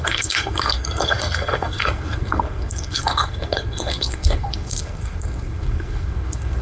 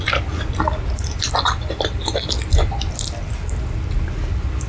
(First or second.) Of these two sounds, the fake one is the first